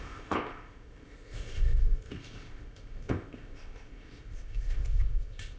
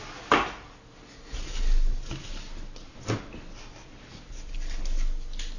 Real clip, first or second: second